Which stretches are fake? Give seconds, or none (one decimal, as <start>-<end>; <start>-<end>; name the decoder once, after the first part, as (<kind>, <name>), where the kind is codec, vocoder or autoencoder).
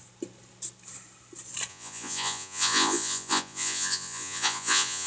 1.7-5.1 (vocoder, Vocos)